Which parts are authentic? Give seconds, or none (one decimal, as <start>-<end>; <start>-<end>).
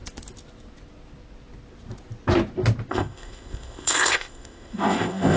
0.0-2.9